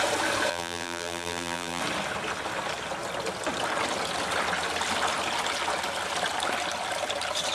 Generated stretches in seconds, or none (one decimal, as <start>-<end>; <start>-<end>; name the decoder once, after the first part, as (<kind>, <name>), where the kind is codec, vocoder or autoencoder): 0.5-1.8 (vocoder, BigVGAN v2)